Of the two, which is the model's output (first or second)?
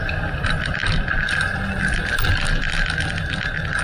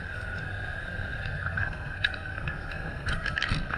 second